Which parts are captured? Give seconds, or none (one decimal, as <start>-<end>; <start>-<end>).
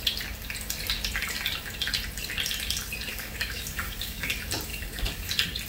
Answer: 0.0-3.1; 4.3-4.7; 5.3-5.7